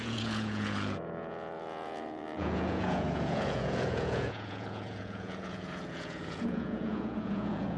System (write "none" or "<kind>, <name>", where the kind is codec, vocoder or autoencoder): vocoder, Vocos